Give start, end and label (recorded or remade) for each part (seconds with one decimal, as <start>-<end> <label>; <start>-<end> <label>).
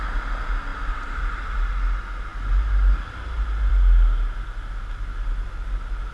0.0-0.7 recorded; 0.7-1.6 remade; 1.6-6.1 recorded